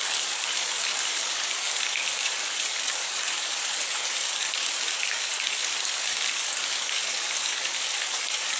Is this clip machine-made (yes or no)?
yes